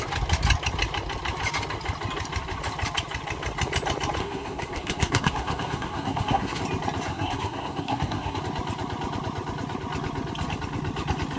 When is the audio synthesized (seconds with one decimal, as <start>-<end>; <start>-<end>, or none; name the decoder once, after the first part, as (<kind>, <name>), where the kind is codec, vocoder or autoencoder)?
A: 4.2-6.6 (codec, SNAC); 7.1-8.4